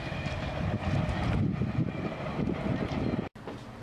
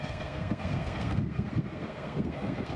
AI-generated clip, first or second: second